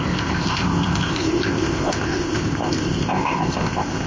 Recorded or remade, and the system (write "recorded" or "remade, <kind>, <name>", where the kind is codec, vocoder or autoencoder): remade, codec, ZipCodec